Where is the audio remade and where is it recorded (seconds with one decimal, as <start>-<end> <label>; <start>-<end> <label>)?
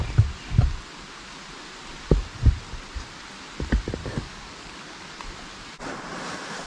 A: 0.0-4.0 recorded; 4.0-5.2 remade; 5.2-6.7 recorded